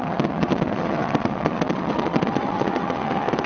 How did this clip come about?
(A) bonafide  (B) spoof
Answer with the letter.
B